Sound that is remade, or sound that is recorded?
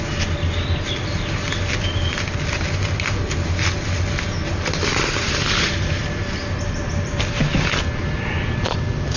recorded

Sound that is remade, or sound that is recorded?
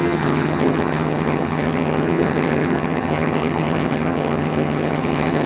remade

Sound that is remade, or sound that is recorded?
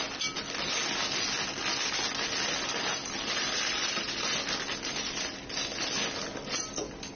recorded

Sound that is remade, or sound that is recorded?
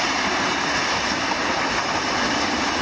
recorded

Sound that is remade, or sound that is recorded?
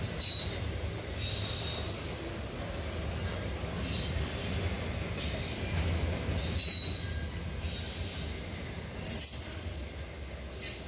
recorded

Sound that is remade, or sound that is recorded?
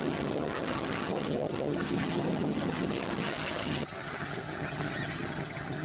remade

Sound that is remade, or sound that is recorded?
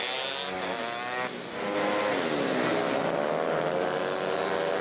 recorded